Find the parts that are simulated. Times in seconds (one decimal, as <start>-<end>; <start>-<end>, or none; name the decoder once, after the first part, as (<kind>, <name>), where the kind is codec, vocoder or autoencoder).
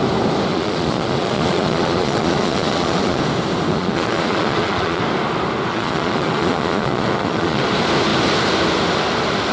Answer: 0.5-3.2 (vocoder, Vocos); 3.7-5.0; 5.7-7.6